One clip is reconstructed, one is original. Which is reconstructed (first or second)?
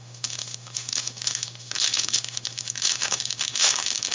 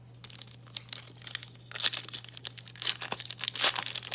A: first